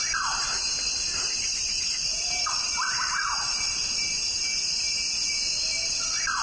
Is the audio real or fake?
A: real